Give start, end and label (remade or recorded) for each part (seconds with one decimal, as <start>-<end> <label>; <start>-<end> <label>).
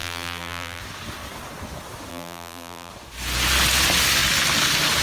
0.0-0.8 remade; 0.8-2.1 recorded; 2.1-2.9 remade; 2.9-5.0 recorded